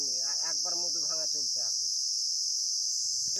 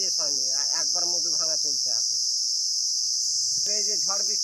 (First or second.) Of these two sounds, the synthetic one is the second